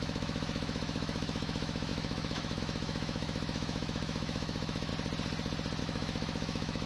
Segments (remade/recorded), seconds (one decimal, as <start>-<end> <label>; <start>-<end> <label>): 0.0-4.9 remade; 4.9-5.8 recorded; 5.8-6.9 remade